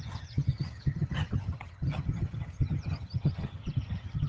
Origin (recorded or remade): remade